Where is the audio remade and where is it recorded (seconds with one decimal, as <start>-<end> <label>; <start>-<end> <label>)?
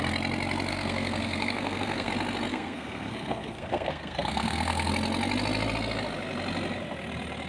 0.0-0.7 recorded; 0.7-2.1 remade; 2.1-2.5 recorded; 2.5-4.9 remade; 4.9-7.5 recorded